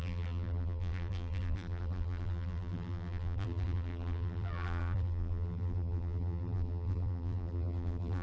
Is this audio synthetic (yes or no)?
yes